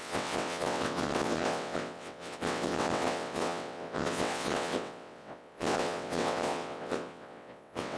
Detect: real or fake fake